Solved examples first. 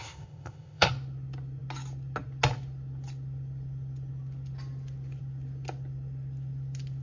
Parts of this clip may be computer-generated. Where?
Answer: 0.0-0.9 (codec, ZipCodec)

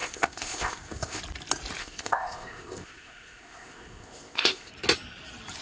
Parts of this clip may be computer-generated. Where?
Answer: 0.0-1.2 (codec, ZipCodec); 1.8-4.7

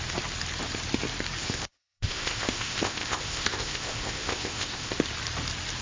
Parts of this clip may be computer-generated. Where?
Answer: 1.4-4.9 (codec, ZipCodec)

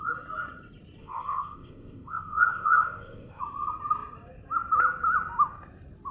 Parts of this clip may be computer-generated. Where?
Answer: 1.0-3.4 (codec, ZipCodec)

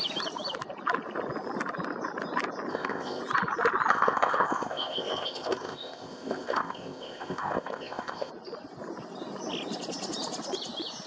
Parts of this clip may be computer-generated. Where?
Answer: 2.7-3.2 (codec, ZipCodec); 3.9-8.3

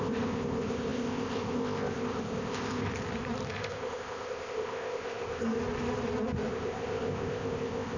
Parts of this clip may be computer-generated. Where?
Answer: 0.0-2.9 (codec, ZipCodec); 3.5-5.6; 6.5-8.0

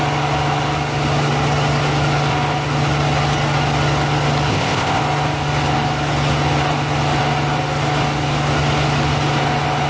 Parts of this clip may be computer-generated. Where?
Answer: 4.5-5.0 (codec, ZipCodec)

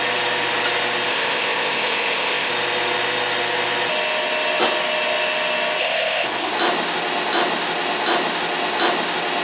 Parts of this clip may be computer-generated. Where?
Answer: 1.1-2.5 (codec, ZipCodec); 5.8-6.5